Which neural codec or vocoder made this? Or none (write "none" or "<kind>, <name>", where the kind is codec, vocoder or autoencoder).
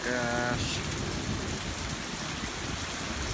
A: none